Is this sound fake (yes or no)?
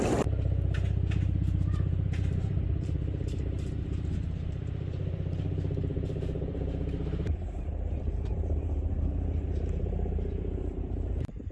yes